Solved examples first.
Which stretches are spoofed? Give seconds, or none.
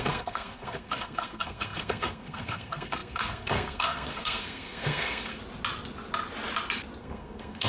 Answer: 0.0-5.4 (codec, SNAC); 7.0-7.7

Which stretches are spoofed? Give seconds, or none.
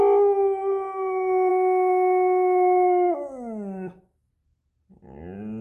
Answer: 1.5-4.3 (autoencoder, DAC-VAE)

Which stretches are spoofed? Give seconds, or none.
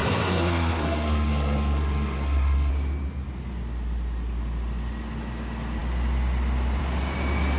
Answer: 0.0-2.7 (codec, SNAC)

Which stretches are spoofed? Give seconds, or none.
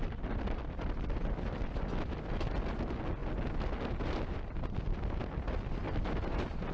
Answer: none